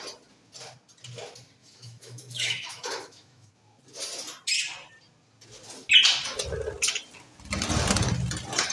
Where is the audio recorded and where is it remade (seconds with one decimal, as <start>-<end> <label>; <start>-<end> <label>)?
0.0-1.6 recorded; 1.6-3.5 remade; 3.5-8.7 recorded